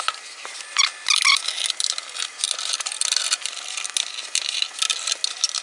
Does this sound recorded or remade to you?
recorded